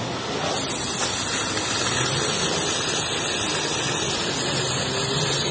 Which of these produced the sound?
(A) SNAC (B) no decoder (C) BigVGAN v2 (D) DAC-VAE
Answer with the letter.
B